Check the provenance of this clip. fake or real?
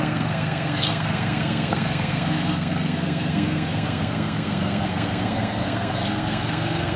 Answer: fake